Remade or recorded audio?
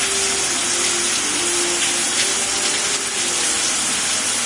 recorded